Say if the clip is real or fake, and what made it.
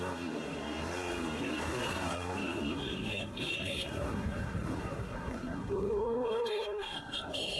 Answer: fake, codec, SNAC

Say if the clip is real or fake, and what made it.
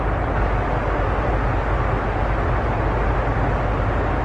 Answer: real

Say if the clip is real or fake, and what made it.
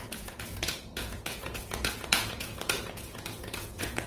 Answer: fake, vocoder, Vocos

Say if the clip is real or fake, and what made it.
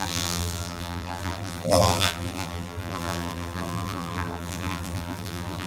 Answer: fake, vocoder, BigVGAN v2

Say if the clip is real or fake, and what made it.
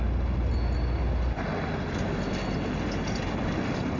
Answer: real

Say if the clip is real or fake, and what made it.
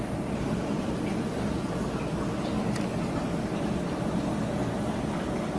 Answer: real